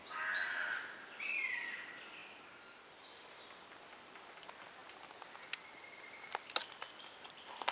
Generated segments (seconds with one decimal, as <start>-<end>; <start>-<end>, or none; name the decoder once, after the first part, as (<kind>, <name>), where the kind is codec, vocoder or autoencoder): 0.0-4.8 (vocoder, BigVGAN v2); 6.6-7.7